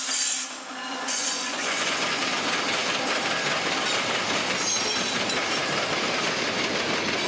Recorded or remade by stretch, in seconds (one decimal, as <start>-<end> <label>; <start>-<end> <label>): 0.0-0.9 recorded; 0.9-2.2 remade; 2.2-7.3 recorded